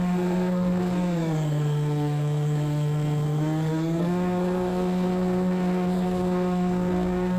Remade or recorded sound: remade